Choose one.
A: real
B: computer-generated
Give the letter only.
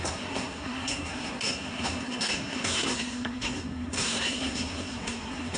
B